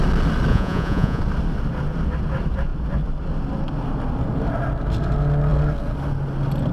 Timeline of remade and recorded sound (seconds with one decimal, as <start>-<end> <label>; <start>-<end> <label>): 0.0-0.5 recorded; 0.5-1.2 remade; 1.2-6.7 recorded